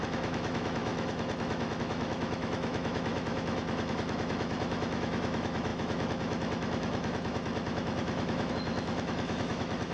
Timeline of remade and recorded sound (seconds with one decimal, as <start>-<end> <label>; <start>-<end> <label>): 0.0-9.9 remade